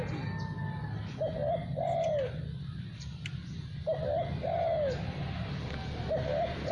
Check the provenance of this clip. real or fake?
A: real